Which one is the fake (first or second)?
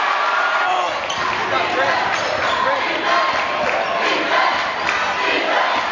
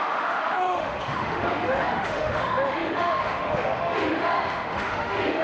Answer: second